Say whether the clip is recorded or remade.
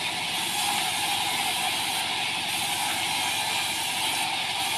remade